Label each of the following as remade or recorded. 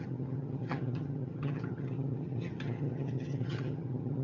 remade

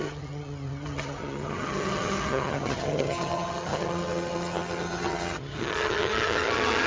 remade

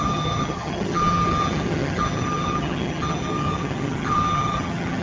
remade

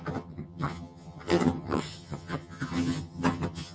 remade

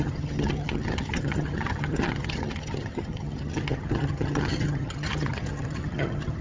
remade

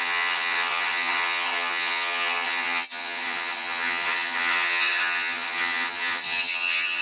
remade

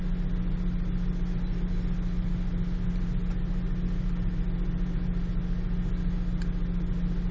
recorded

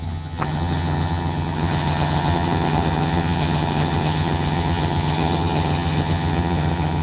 remade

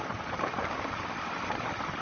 recorded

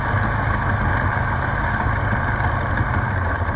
recorded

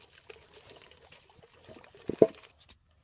recorded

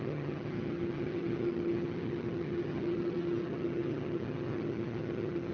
remade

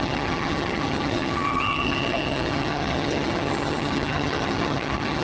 remade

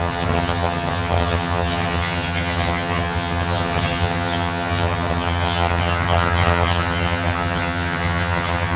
remade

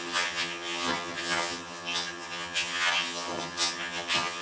remade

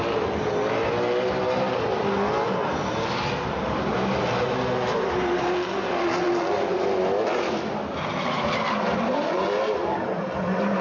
recorded